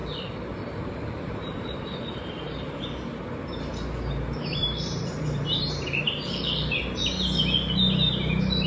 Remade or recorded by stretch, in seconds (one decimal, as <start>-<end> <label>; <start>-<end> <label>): 0.0-2.8 remade; 2.8-4.6 recorded; 4.6-6.8 remade; 6.8-8.7 recorded